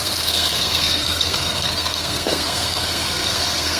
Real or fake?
fake